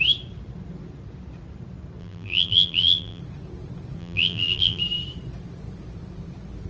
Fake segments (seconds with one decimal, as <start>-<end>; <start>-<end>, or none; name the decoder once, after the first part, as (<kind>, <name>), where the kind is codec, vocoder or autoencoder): 2.0-3.2 (vocoder, BigVGAN v2); 4.0-4.8